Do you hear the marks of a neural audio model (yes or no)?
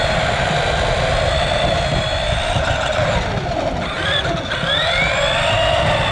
yes